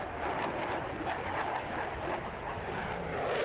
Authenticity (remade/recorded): recorded